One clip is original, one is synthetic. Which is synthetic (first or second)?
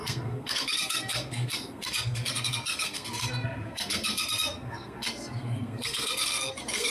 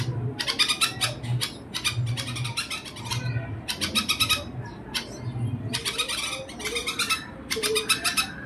first